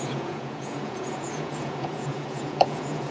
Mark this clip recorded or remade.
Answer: remade